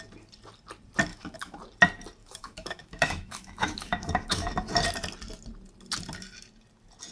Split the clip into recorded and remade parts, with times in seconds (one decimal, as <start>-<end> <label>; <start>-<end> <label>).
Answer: 0.0-1.1 recorded; 1.1-1.6 remade; 1.6-2.2 recorded; 2.2-4.7 remade; 4.7-7.1 recorded